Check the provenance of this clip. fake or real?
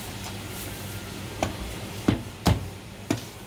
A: fake